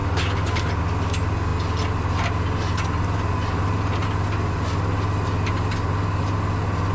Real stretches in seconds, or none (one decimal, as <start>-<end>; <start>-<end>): 0.0-6.9